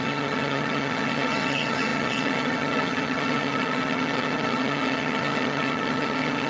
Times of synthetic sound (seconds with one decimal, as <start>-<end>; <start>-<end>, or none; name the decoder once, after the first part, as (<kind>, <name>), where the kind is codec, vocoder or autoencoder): 0.0-6.5 (vocoder, HiFi-GAN)